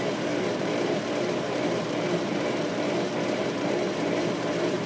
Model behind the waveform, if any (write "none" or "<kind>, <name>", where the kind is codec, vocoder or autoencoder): vocoder, BigVGAN v2